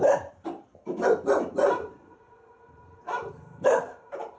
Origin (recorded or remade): remade